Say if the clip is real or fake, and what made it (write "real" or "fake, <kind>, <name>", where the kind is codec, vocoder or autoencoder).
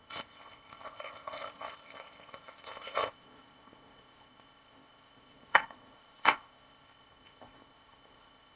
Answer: fake, codec, ZipCodec